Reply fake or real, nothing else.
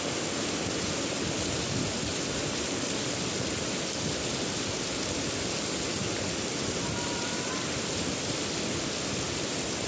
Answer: real